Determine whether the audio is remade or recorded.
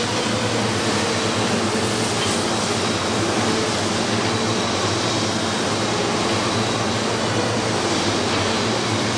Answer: recorded